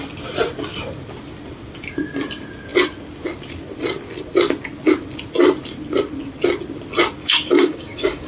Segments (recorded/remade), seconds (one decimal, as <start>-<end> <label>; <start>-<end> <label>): 0.0-7.2 recorded; 7.2-8.3 remade